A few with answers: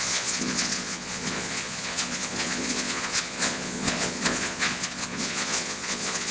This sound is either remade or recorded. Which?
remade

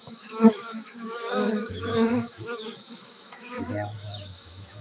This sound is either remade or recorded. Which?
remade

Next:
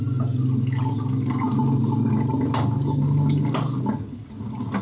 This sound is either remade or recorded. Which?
recorded